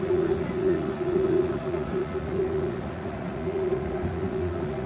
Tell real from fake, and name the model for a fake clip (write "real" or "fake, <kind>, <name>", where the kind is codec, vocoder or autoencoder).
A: fake, vocoder, Vocos